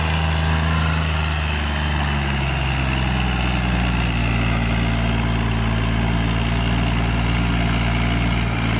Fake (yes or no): no